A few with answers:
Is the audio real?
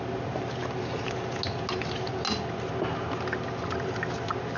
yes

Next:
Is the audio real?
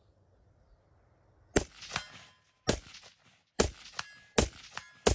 yes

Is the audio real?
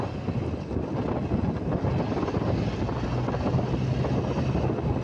yes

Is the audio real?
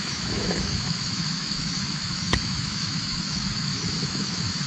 no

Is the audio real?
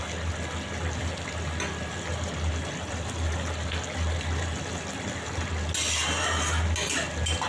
yes